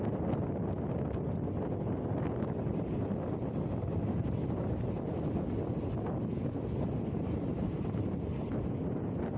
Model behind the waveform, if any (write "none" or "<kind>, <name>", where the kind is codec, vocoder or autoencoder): none